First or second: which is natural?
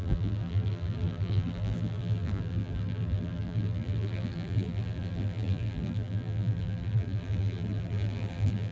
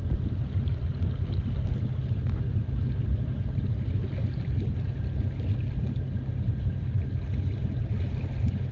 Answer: second